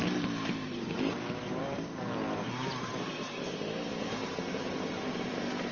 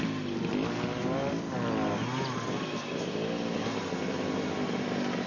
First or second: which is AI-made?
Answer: first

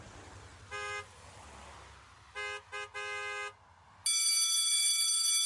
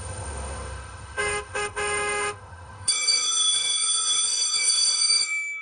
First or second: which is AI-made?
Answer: second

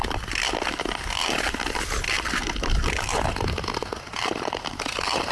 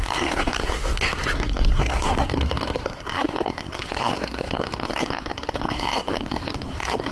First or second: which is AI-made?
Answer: second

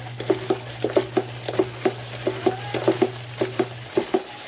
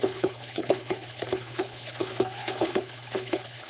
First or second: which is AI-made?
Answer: second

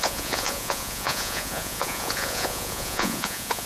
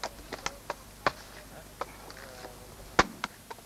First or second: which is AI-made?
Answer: first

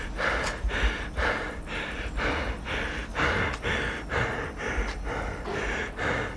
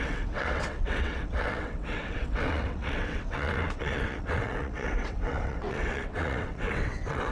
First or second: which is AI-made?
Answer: second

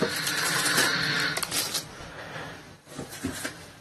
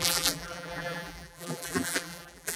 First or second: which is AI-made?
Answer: second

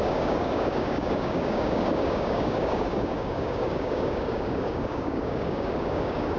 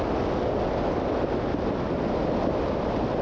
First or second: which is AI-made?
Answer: first